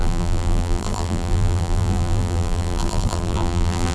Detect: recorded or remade remade